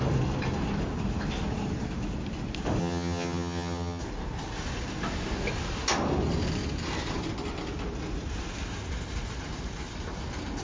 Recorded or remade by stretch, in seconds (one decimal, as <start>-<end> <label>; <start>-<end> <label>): 0.0-2.8 recorded; 2.8-4.0 remade; 4.0-10.6 recorded